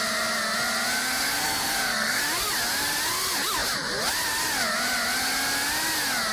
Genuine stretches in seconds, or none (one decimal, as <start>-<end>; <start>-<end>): 0.0-1.0; 2.2-6.3